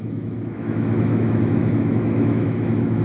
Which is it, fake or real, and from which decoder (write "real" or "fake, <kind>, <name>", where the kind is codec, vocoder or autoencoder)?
fake, autoencoder, DAC-VAE